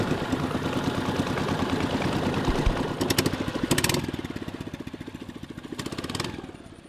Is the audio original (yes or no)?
yes